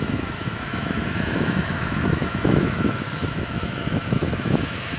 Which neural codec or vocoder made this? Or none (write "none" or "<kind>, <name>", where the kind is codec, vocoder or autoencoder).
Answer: autoencoder, DAC-VAE